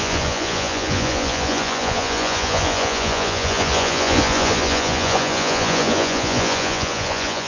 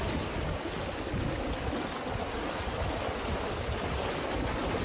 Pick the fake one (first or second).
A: first